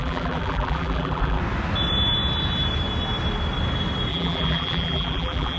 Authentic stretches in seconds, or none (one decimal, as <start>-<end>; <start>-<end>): 1.4-4.1